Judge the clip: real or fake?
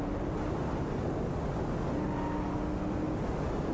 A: real